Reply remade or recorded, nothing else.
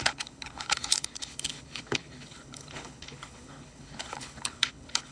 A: remade